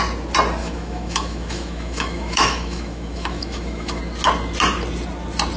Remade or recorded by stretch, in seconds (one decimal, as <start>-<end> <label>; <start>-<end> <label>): 0.0-0.6 recorded; 0.6-4.0 remade; 4.0-5.6 recorded